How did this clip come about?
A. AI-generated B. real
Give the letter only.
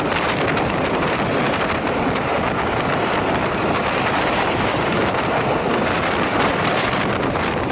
A